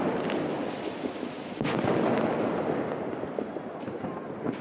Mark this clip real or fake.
real